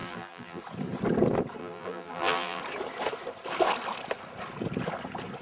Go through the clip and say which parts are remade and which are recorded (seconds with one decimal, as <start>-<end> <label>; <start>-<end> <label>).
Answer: 0.0-0.6 remade; 0.6-1.6 recorded; 1.6-2.6 remade; 2.6-5.4 recorded